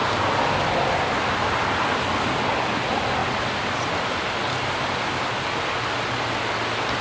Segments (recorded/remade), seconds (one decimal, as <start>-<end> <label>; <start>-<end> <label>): 0.0-7.0 recorded